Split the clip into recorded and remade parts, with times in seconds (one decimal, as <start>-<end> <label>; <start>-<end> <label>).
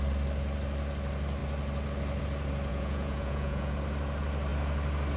0.0-2.7 recorded; 2.7-3.7 remade; 3.7-5.2 recorded